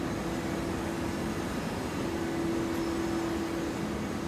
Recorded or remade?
recorded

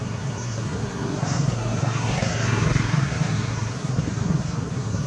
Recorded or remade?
remade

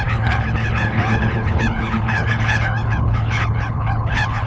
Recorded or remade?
remade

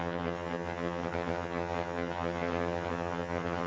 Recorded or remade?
remade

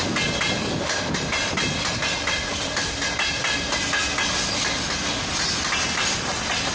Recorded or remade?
recorded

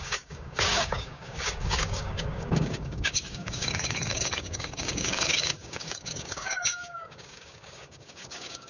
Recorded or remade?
remade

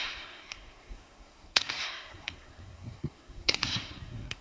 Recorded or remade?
remade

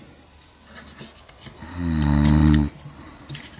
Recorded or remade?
recorded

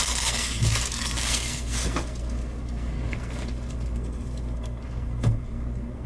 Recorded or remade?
remade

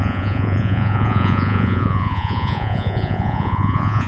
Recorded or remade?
remade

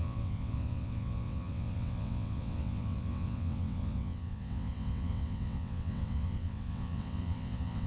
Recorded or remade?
remade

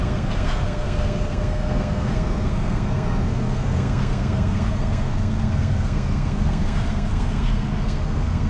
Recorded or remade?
remade